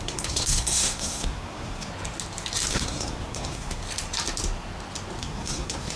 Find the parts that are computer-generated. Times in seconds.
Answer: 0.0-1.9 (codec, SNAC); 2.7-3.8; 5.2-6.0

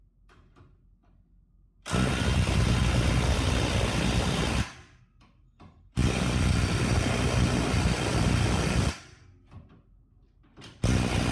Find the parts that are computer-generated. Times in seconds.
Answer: none

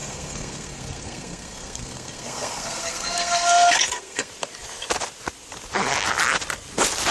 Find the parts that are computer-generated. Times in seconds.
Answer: 0.0-4.3 (codec, SNAC)

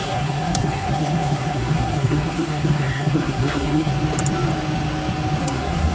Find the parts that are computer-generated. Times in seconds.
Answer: 0.0-3.9 (codec, SNAC); 5.4-5.9